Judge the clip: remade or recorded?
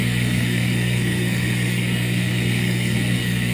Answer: remade